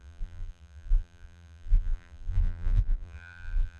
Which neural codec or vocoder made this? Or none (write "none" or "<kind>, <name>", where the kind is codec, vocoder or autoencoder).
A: vocoder, BigVGAN v2